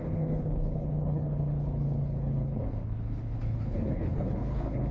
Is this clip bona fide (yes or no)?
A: no